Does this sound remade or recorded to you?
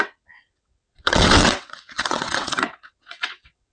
remade